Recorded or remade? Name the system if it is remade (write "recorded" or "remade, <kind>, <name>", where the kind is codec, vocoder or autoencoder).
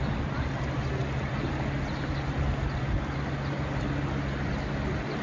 recorded